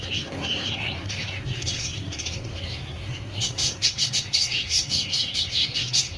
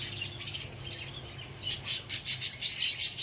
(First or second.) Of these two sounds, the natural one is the second